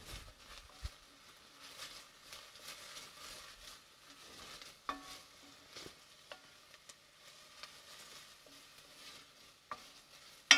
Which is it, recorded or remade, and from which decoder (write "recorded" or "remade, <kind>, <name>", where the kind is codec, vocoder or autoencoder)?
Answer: recorded